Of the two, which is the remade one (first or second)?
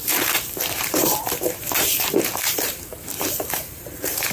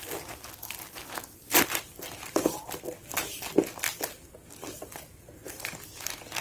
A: first